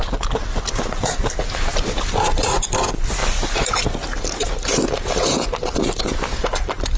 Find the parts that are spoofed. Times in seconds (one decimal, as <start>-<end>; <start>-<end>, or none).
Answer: 3.2-3.7